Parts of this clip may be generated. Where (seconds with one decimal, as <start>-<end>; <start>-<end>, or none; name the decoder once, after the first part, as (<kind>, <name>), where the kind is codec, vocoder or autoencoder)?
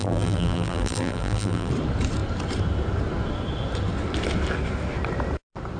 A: 0.0-1.7 (vocoder, BigVGAN v2)